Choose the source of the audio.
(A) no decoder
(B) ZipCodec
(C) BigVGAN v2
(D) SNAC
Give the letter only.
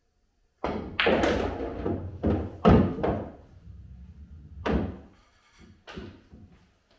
A